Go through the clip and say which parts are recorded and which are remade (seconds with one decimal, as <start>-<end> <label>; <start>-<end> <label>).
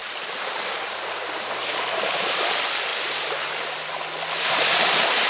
0.0-1.2 remade; 1.2-1.6 recorded; 1.6-2.3 remade; 2.3-2.9 recorded; 2.9-3.8 remade; 3.8-5.3 recorded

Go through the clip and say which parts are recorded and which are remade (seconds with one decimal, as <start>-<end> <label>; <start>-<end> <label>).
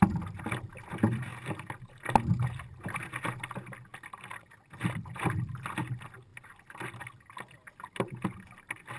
0.0-9.0 recorded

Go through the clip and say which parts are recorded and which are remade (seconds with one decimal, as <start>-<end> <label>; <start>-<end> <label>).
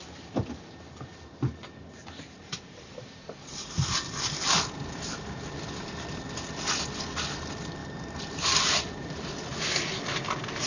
0.0-2.0 recorded; 2.0-3.2 remade; 3.2-7.8 recorded; 7.8-8.9 remade; 8.9-10.7 recorded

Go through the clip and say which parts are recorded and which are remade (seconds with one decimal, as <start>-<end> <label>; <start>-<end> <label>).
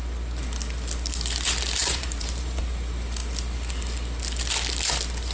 0.0-1.8 recorded; 1.8-2.6 remade; 2.6-5.3 recorded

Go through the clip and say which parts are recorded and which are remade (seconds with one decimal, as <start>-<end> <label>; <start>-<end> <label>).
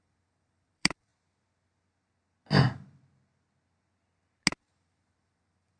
0.0-1.1 remade; 1.1-4.6 recorded; 4.6-5.8 remade